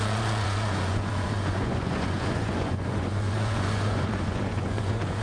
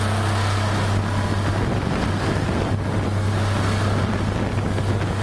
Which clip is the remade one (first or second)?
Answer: first